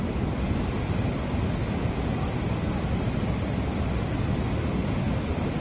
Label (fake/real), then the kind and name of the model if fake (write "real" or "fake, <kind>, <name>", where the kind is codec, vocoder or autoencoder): real